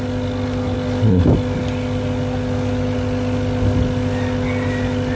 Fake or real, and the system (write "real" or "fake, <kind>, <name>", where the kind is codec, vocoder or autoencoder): real